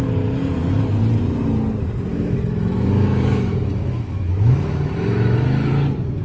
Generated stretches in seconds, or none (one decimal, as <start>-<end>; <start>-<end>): 2.1-5.7